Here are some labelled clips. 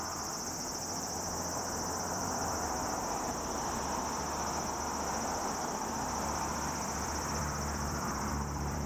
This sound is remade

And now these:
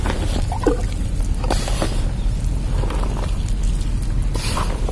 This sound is recorded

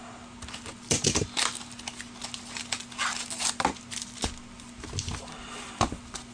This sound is recorded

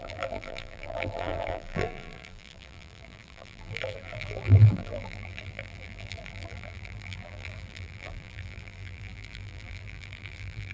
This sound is remade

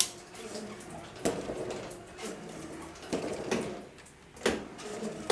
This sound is recorded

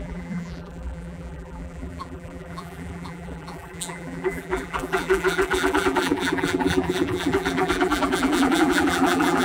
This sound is remade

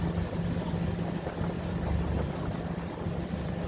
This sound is recorded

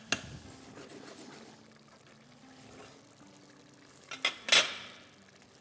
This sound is recorded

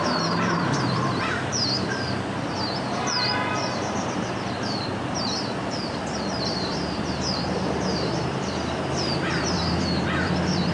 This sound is remade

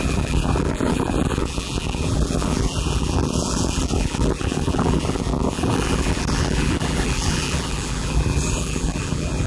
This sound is remade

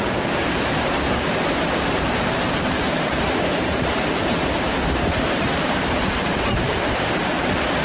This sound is remade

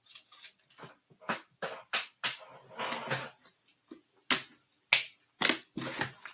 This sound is recorded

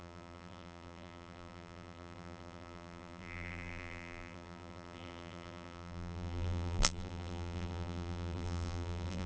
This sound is remade